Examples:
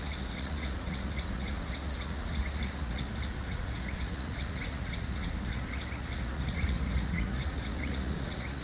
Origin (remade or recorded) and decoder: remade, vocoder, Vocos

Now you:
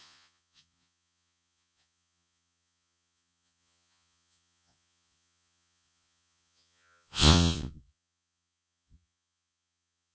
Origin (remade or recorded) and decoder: remade, vocoder, Vocos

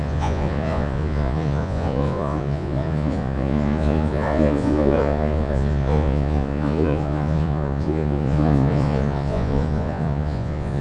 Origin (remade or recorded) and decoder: remade, vocoder, Vocos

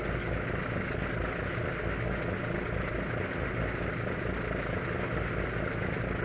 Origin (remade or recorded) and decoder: recorded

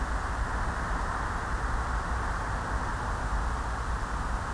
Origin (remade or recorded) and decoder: recorded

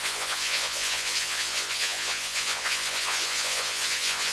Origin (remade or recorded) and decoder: remade, vocoder, Vocos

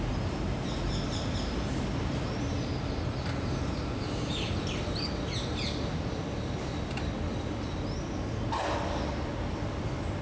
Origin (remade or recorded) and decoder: recorded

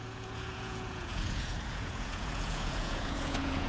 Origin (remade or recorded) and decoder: remade, vocoder, Vocos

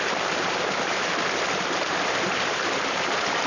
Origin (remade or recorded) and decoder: recorded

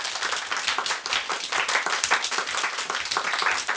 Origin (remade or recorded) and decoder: recorded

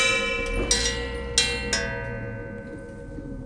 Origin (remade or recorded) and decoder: recorded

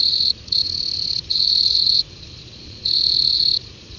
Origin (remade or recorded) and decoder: remade, vocoder, Vocos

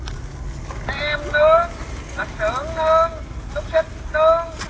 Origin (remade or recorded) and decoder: recorded